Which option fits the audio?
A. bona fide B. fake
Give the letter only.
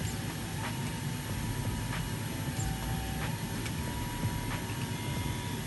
A